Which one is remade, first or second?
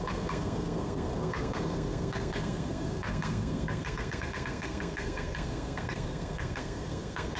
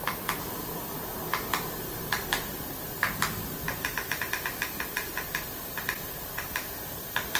first